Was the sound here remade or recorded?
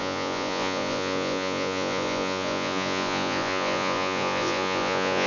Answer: remade